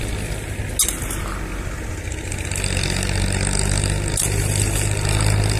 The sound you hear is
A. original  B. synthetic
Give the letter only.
A